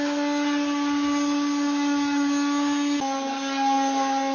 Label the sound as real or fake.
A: real